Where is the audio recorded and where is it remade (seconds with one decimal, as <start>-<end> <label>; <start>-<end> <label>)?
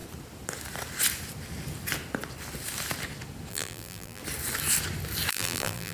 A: 0.0-3.5 recorded; 3.5-4.2 remade; 4.2-5.3 recorded; 5.3-5.9 remade